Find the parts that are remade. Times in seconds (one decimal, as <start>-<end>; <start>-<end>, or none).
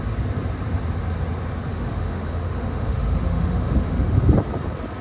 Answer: 1.7-4.2